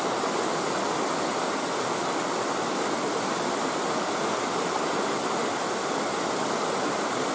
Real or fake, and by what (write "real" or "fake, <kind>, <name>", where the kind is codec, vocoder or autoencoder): real